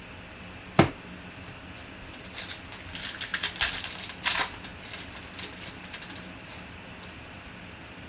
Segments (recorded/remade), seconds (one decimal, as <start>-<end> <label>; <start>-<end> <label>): 0.0-8.1 recorded